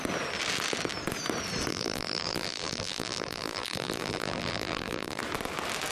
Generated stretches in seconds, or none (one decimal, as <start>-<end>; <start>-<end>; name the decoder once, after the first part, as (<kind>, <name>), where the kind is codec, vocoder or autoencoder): 1.7-5.2 (vocoder, BigVGAN v2)